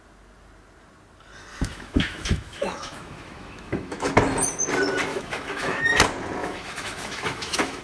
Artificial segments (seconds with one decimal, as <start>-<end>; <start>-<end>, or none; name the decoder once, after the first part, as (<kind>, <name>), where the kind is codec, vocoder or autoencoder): 1.5-4.1 (autoencoder, DAC-VAE); 5.1-5.8; 6.4-7.8